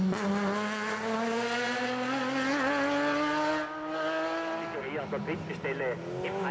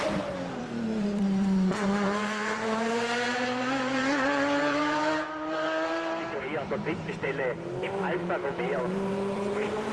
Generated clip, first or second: second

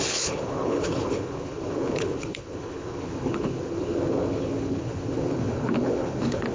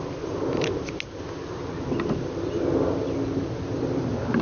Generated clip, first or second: first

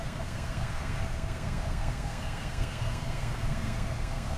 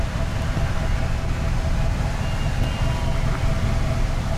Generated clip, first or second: first